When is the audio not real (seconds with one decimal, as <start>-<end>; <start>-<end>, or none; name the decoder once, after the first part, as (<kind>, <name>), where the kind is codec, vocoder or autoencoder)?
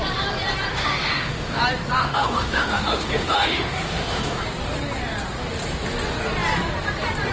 0.7-1.6 (autoencoder, DAC-VAE); 2.0-4.4